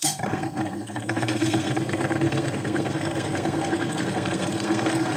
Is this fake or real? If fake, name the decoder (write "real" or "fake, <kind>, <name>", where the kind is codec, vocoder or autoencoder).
fake, codec, SNAC